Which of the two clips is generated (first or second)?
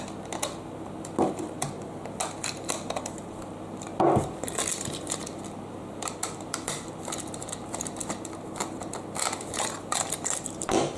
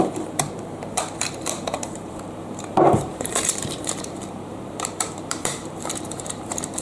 second